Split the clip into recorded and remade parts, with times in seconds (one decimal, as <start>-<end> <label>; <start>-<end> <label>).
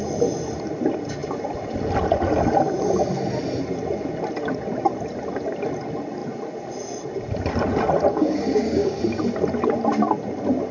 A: 0.0-8.1 recorded; 8.1-9.0 remade; 9.0-10.7 recorded